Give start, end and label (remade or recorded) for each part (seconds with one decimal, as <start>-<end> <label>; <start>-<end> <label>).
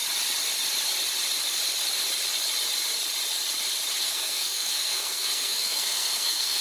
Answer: 0.0-4.0 recorded; 4.0-6.6 remade